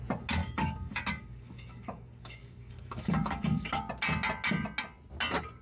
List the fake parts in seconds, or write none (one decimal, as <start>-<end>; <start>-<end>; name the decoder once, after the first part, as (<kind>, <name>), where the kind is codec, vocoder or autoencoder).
0.4-3.8 (codec, DAC)